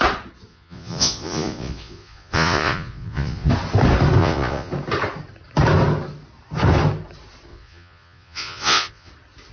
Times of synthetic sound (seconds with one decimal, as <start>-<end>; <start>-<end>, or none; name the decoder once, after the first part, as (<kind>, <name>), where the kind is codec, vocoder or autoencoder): 0.5-3.5 (vocoder, Vocos); 4.2-4.7; 7.5-9.1